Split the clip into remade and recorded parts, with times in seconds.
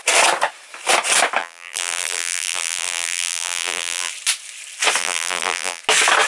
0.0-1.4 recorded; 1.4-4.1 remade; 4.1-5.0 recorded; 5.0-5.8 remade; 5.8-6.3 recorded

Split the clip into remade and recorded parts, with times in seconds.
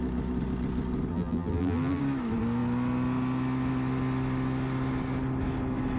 0.0-1.1 recorded; 1.1-2.0 remade; 2.0-6.0 recorded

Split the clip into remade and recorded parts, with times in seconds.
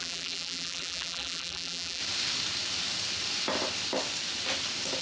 0.0-2.0 remade; 2.0-5.0 recorded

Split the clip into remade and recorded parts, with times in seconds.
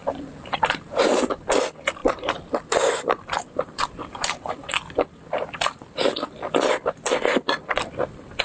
0.0-1.2 remade; 1.2-2.0 recorded; 2.0-4.7 remade; 4.7-8.4 recorded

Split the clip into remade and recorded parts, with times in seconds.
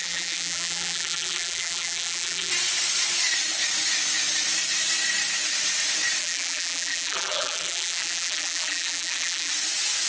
0.0-2.5 remade; 2.5-6.2 recorded; 6.2-9.5 remade; 9.5-10.1 recorded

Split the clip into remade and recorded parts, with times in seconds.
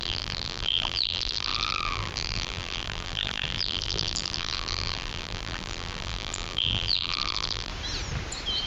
0.0-7.7 remade; 7.7-8.7 recorded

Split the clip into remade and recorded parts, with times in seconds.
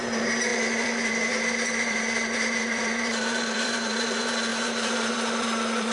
0.0-5.9 remade